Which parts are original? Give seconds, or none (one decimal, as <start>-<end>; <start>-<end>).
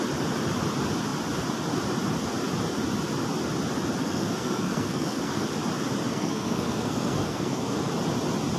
0.0-4.0; 5.5-6.1; 7.9-8.6